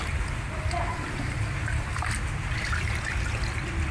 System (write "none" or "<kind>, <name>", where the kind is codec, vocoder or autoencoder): none